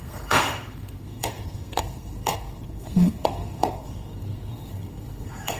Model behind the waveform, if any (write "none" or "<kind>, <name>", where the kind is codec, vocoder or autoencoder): codec, SNAC